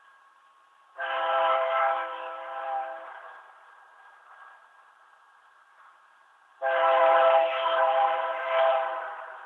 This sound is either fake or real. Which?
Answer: fake